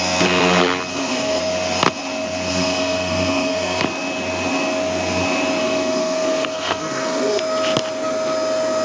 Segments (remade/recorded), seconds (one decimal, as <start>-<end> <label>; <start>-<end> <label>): 0.0-0.9 recorded; 0.9-1.4 remade; 1.4-2.5 recorded; 2.5-3.8 remade; 3.8-5.6 recorded; 5.6-7.4 remade; 7.4-8.8 recorded